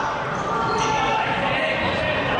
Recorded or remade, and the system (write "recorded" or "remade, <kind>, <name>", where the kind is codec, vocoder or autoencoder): recorded